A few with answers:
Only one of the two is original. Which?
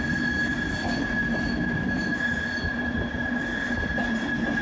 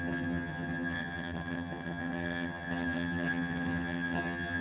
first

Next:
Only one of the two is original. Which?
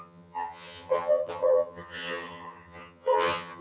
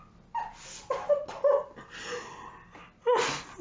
second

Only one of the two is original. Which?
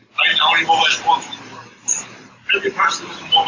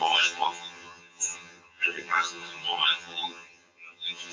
first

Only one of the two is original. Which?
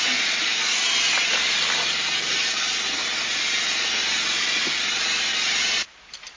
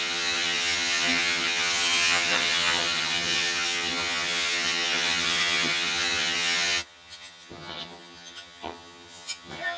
first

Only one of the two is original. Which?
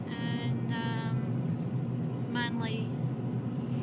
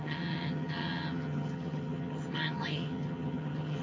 first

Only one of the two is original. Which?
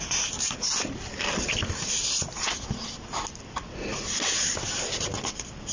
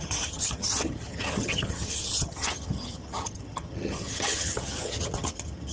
first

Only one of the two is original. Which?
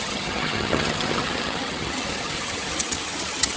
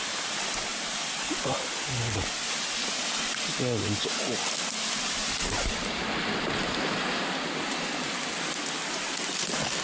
second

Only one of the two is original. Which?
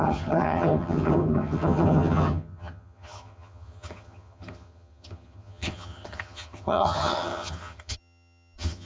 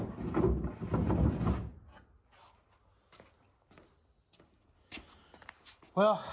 second